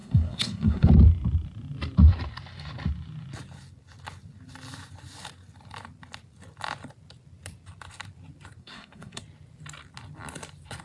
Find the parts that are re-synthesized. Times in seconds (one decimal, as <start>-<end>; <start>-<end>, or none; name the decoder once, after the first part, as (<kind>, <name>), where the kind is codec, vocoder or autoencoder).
0.0-0.9 (codec, SNAC); 8.6-9.2